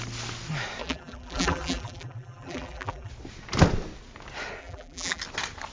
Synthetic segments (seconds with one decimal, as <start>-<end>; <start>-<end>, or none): 0.8-3.1; 4.6-5.2